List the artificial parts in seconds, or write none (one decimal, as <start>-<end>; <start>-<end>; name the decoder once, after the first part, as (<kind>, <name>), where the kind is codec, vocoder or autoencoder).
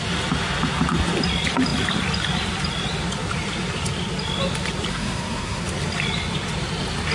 4.9-5.6 (codec, SNAC)